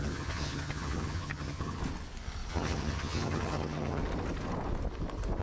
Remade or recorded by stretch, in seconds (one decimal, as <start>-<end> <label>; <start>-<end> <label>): 0.0-1.8 remade; 1.8-2.5 recorded; 2.5-4.0 remade; 4.0-5.4 recorded